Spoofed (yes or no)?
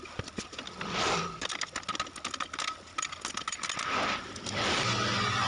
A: no